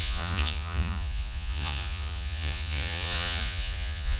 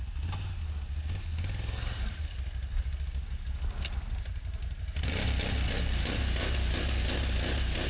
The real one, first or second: second